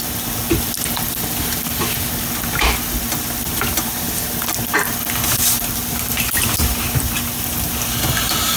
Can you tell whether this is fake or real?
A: real